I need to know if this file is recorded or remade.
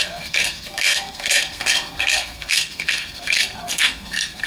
remade